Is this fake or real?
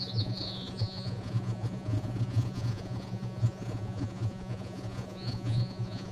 fake